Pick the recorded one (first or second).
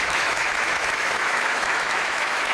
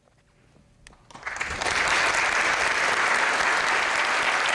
second